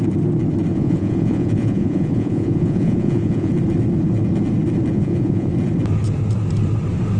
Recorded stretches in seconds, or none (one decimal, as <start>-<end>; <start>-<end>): 0.0-0.7; 3.5-4.9; 5.5-7.2